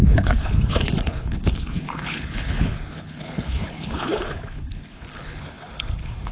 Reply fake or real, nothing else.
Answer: fake